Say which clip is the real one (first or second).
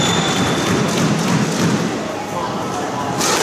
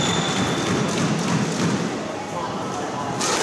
first